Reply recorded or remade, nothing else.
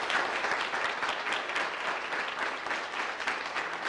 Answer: recorded